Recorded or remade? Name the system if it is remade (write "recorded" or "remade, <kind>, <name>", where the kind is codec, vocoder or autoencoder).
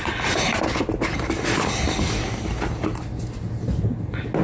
recorded